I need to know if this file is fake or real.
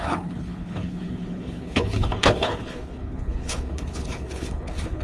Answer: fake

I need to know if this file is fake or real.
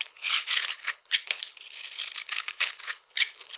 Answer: fake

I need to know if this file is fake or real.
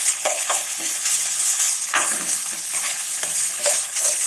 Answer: fake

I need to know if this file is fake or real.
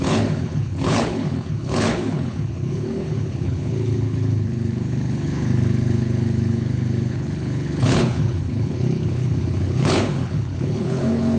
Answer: fake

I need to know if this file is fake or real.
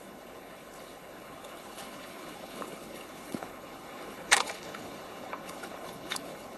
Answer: fake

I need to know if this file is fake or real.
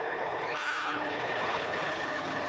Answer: fake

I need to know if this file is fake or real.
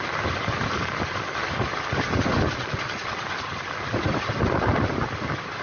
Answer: real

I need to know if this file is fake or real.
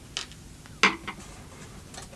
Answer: real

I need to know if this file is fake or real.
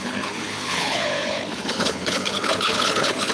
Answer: fake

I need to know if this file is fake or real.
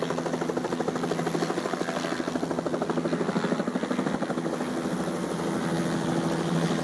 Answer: real